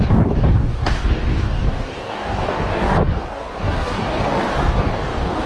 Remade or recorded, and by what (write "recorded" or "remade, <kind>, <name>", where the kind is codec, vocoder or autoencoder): remade, codec, DAC